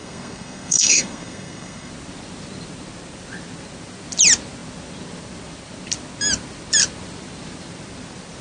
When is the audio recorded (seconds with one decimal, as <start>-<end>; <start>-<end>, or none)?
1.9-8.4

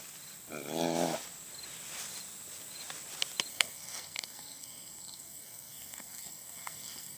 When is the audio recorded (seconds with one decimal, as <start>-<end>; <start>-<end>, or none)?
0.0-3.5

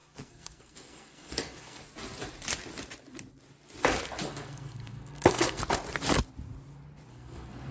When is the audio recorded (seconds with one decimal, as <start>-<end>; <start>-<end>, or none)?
1.8-4.3; 5.6-7.1

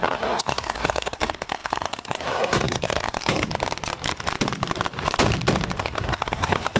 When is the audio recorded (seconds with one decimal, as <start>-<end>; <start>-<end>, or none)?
3.5-5.8